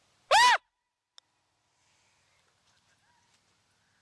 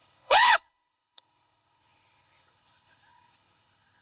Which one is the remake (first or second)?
second